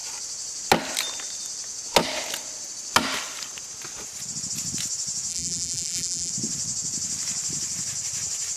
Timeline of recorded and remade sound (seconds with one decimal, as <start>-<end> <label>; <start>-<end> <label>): 0.0-5.3 recorded; 5.3-6.3 remade; 6.3-8.6 recorded